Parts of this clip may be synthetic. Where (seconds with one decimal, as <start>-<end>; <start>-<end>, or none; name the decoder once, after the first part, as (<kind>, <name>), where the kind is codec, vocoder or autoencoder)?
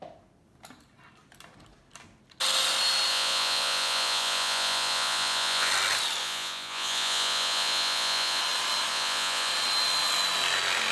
3.1-5.7 (vocoder, Vocos); 6.2-8.4; 8.9-9.5